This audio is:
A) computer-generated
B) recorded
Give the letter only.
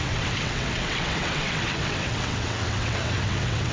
A